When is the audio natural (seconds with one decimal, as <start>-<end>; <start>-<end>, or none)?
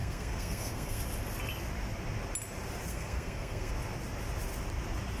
1.0-2.9; 3.7-5.2